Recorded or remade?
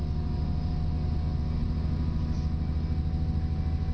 recorded